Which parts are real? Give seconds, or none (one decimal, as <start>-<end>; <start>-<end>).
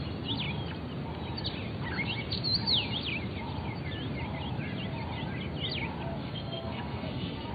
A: 0.0-6.2